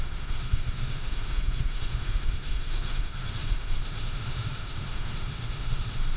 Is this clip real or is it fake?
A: fake